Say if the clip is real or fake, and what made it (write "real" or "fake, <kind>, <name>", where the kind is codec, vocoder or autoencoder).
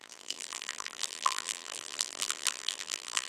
fake, vocoder, BigVGAN v2